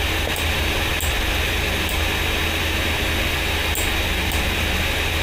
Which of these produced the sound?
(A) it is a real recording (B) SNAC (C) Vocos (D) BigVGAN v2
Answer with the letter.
A